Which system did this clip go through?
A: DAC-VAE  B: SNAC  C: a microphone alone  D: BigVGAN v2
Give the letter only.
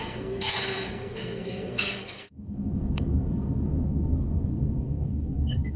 B